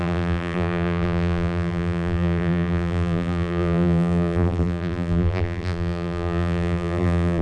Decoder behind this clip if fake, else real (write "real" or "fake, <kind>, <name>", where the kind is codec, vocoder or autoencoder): fake, vocoder, BigVGAN v2